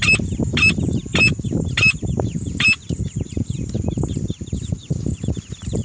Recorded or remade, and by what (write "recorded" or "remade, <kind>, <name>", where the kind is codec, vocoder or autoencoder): recorded